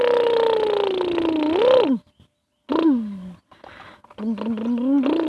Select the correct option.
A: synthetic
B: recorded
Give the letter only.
B